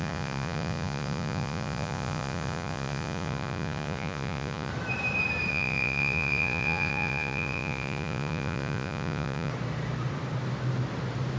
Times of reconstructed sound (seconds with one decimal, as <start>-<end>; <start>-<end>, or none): 0.0-4.7; 5.5-9.5